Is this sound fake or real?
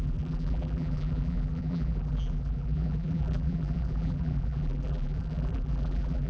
fake